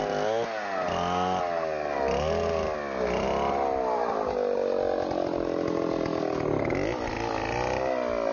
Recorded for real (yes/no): yes